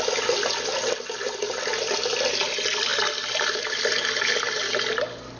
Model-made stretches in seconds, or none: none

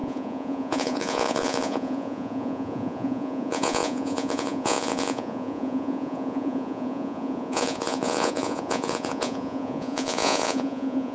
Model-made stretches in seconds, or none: 0.0-11.1 (vocoder, Vocos)